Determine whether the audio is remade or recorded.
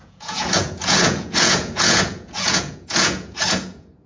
remade